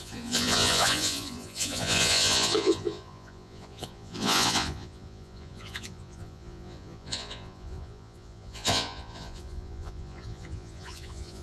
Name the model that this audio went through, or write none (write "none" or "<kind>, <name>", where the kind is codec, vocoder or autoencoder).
vocoder, Vocos